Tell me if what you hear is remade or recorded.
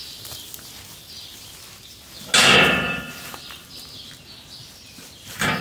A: recorded